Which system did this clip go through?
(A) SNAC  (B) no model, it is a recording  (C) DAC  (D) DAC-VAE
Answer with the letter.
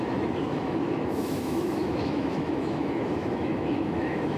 D